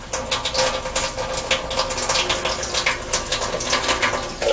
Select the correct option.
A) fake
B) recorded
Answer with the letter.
B